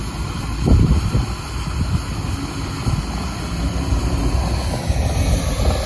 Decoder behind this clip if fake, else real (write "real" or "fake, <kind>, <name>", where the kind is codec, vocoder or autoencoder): real